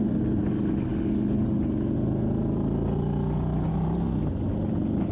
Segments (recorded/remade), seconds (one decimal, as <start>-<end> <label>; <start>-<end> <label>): 0.0-5.1 recorded